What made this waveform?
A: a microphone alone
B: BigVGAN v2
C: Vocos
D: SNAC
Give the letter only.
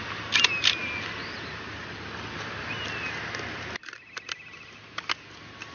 A